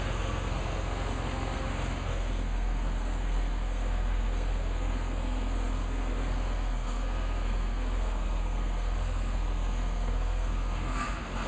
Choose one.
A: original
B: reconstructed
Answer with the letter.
B